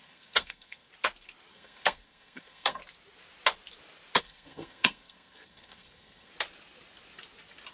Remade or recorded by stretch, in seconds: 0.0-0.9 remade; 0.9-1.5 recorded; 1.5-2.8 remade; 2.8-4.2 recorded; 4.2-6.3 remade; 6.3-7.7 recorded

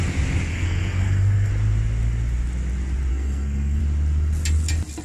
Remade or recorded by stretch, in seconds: 0.0-0.5 recorded; 0.5-1.5 remade; 1.5-3.1 recorded; 3.1-3.8 remade; 3.8-5.0 recorded

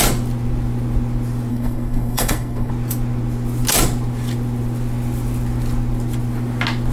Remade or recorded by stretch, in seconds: 0.0-1.5 recorded; 1.5-2.7 remade; 2.7-6.9 recorded